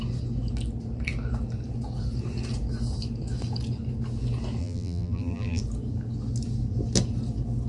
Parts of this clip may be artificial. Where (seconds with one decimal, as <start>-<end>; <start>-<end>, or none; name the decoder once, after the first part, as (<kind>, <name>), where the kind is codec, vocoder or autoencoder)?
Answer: 4.6-5.6 (vocoder, BigVGAN v2)